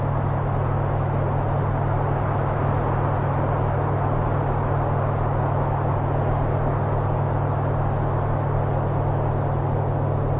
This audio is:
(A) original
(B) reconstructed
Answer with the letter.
A